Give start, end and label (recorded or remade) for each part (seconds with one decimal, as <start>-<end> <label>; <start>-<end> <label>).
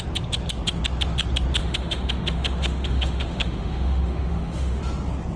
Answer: 0.0-1.6 recorded; 1.6-4.8 remade; 4.8-5.4 recorded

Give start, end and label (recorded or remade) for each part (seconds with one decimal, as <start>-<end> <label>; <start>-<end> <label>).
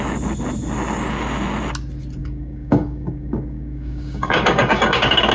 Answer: 0.0-2.2 recorded; 2.2-5.3 remade